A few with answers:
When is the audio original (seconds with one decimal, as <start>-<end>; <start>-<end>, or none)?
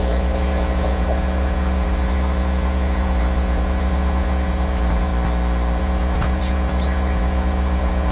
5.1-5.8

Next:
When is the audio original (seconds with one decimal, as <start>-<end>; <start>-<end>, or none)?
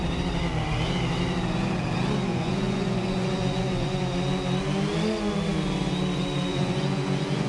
0.0-2.3; 4.0-6.5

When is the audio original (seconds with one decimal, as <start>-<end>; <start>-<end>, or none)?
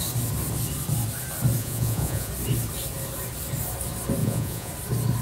0.0-1.6; 2.3-4.2; 4.7-5.2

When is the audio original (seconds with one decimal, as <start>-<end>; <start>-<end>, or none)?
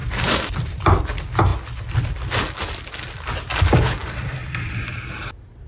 1.0-4.0; 4.8-5.7